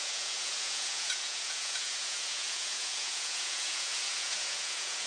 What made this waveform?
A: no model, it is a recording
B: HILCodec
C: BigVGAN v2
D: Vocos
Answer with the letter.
D